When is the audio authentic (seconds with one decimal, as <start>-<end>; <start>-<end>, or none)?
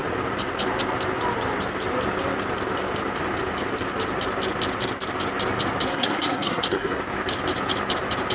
0.0-5.9; 7.0-8.3